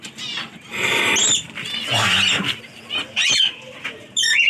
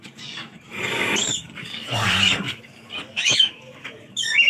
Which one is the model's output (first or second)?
second